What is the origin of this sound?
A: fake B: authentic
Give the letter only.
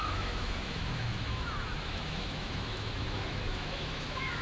A